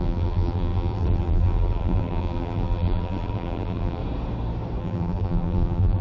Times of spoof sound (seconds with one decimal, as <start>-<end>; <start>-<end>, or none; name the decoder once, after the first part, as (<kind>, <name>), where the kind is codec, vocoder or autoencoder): 0.0-4.0 (vocoder, BigVGAN v2); 4.8-6.0